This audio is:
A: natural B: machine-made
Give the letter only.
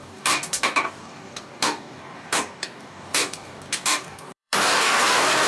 B